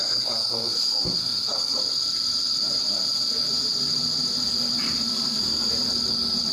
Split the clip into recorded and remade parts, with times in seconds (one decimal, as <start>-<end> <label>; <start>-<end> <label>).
0.0-1.8 remade; 1.8-5.1 recorded; 5.1-5.7 remade; 5.7-6.5 recorded